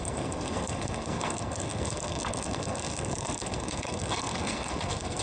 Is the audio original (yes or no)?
no